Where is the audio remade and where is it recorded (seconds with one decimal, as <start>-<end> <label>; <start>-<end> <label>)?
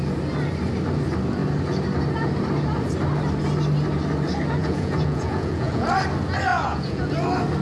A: 0.0-4.6 recorded; 4.6-5.9 remade; 5.9-6.5 recorded; 6.5-7.1 remade; 7.1-7.6 recorded